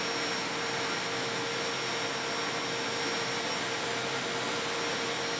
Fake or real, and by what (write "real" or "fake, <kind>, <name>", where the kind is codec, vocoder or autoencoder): real